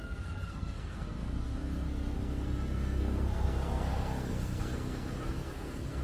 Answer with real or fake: fake